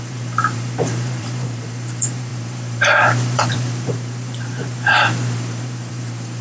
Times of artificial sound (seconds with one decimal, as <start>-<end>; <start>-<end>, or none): 0.0-6.4